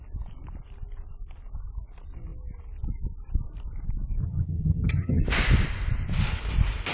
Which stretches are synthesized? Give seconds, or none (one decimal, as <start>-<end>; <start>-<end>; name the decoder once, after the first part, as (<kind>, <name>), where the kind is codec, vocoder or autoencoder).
4.2-5.2 (vocoder, HiFi-GAN)